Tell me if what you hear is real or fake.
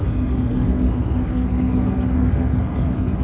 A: fake